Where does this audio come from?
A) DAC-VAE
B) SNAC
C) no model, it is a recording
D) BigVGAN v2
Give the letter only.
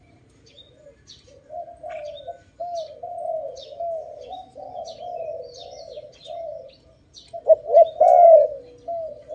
C